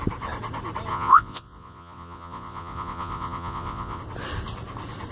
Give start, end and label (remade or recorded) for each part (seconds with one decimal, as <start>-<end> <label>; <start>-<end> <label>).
0.0-0.9 recorded; 0.9-4.0 remade; 4.0-5.1 recorded